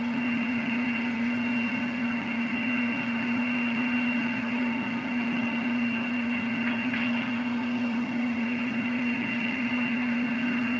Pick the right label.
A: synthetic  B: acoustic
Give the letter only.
A